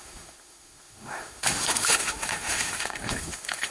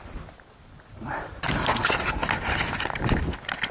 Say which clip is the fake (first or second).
first